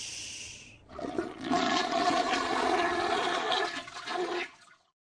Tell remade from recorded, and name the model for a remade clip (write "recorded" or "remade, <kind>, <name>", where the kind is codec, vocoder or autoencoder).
remade, vocoder, Vocos